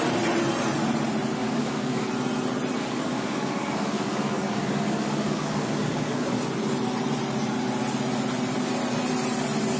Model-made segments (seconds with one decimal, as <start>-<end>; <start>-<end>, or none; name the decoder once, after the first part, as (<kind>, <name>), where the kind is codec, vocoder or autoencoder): 1.4-2.1 (codec, DAC); 2.8-6.4